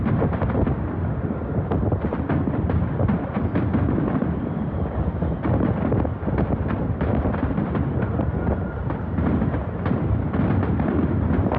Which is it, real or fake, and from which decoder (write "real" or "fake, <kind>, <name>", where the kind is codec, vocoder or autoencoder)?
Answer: real